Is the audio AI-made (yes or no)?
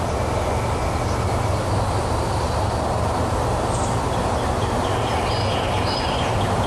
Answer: no